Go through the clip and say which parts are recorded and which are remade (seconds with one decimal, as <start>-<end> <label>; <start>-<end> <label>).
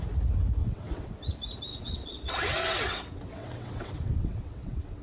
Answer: 0.0-0.6 recorded; 0.6-1.1 remade; 1.1-1.7 recorded; 1.7-5.0 remade